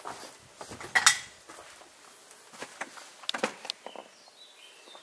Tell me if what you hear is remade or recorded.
recorded